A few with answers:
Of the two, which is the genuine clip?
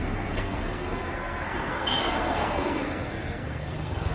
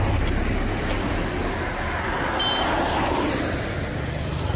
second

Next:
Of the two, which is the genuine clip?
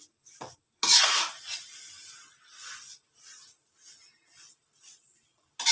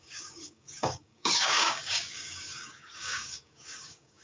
first